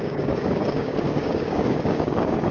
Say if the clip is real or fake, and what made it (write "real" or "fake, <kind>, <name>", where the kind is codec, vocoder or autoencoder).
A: fake, codec, DAC